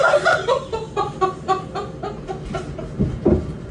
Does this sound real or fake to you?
real